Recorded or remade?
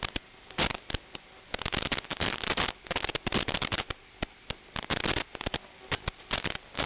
recorded